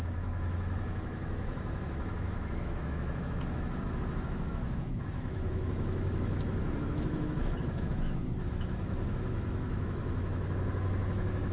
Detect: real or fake fake